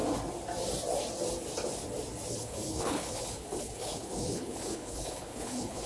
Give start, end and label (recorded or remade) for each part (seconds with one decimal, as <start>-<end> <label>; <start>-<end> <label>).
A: 0.0-2.3 recorded; 2.3-5.9 remade